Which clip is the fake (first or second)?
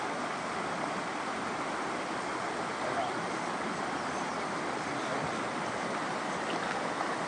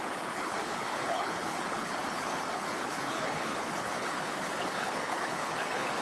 second